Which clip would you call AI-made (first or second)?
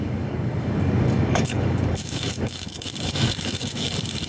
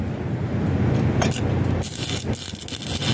first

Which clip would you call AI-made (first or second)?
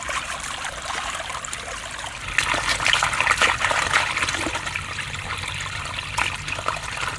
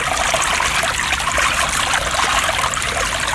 first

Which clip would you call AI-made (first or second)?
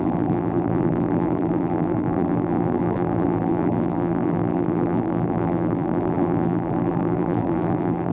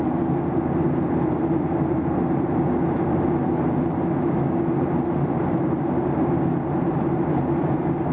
first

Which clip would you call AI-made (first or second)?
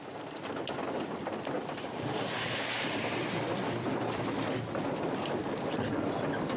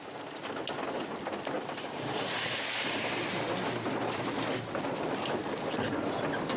first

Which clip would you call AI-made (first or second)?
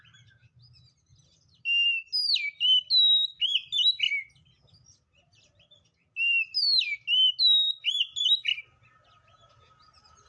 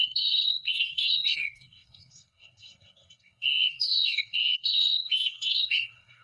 second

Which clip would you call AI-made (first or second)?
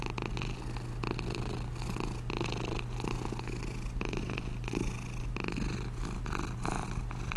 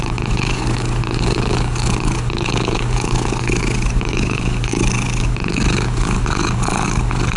second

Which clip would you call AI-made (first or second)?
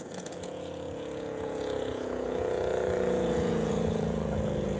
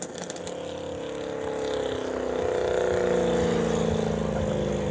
first